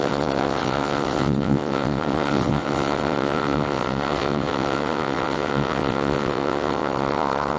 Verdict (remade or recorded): remade